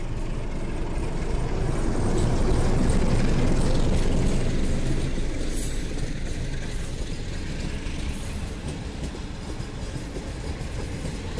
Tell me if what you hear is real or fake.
real